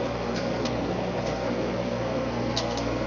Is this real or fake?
fake